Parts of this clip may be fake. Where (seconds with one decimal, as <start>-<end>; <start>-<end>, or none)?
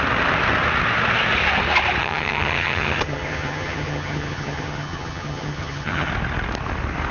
2.0-6.1